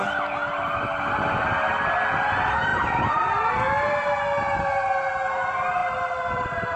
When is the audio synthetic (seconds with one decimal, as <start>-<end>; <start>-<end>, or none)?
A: 2.7-3.5; 5.8-6.8